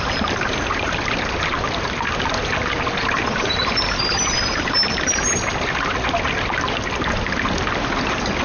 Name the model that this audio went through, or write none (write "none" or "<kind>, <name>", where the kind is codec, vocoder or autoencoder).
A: none